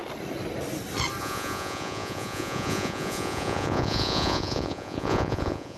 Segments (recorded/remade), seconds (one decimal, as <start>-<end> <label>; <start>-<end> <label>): 0.0-1.2 recorded; 1.2-5.8 remade